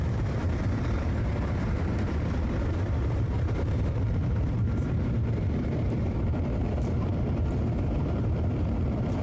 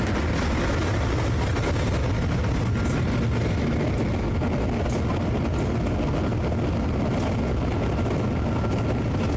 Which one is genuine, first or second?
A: second